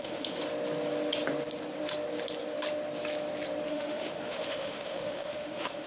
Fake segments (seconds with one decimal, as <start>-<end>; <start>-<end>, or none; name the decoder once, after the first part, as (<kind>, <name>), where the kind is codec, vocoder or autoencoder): 0.0-0.4 (autoencoder, DAC-VAE); 3.7-5.9